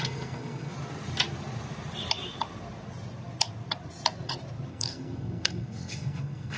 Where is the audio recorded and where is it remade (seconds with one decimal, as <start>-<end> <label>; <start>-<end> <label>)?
0.0-0.7 remade; 0.7-4.7 recorded; 4.7-6.6 remade

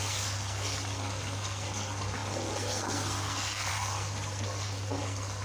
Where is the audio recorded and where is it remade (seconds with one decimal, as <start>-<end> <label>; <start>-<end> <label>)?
0.0-5.4 remade

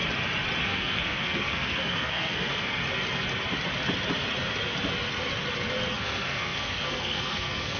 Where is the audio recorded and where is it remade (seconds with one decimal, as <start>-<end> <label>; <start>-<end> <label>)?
0.0-0.6 recorded; 0.6-2.8 remade; 2.8-5.9 recorded; 5.9-7.8 remade

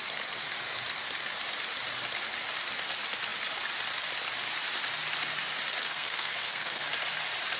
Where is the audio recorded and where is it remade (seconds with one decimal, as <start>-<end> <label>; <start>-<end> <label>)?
0.0-5.8 recorded; 5.8-6.8 remade; 6.8-7.6 recorded

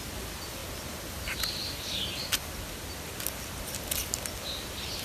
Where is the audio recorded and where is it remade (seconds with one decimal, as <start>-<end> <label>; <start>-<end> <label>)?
0.0-5.0 recorded